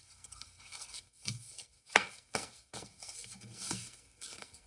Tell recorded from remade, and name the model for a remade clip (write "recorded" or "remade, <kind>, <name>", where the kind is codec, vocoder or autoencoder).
remade, codec, SNAC